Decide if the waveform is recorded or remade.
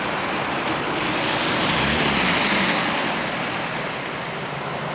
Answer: recorded